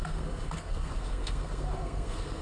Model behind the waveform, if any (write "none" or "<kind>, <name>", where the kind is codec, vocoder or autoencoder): codec, SNAC